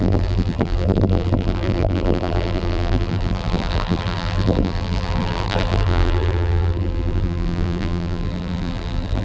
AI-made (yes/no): yes